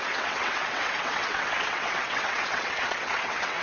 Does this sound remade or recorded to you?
remade